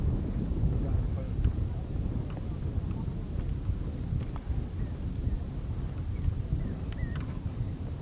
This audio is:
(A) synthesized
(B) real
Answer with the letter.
B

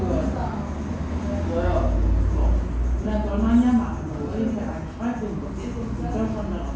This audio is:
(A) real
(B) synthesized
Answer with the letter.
A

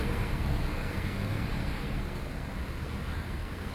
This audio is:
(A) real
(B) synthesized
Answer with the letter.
B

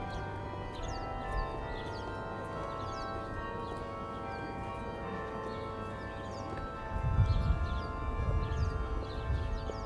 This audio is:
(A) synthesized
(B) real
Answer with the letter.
B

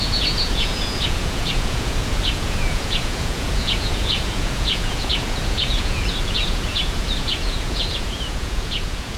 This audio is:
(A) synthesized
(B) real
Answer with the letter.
A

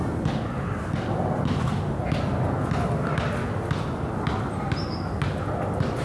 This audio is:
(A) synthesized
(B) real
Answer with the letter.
B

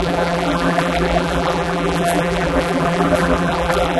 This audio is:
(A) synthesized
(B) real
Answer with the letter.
A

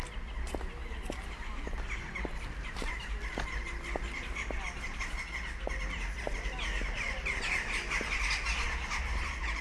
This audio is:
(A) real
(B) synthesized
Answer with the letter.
A